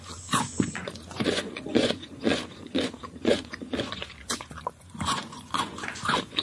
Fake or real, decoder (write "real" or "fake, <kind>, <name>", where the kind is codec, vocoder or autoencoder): fake, vocoder, Vocos